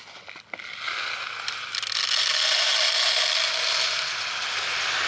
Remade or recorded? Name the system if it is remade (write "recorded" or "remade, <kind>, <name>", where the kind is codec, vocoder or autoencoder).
recorded